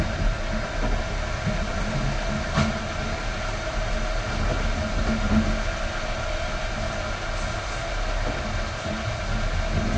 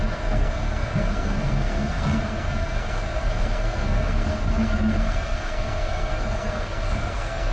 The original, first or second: first